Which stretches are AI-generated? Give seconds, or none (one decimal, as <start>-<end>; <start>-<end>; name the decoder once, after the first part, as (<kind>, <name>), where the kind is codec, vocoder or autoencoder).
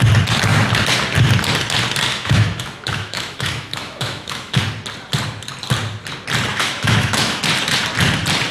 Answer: 2.1-4.6 (autoencoder, DAC-VAE); 6.5-7.4